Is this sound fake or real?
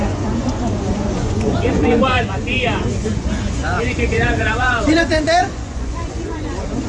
fake